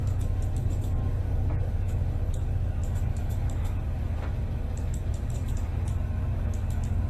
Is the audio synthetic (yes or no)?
yes